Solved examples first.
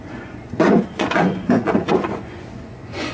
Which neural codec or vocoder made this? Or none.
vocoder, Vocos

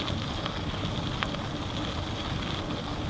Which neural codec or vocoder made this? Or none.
none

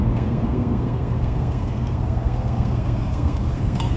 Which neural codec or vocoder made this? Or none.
codec, SNAC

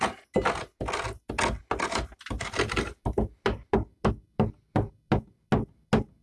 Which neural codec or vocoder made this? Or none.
none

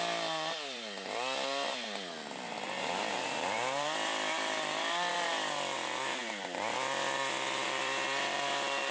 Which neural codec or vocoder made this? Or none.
vocoder, BigVGAN v2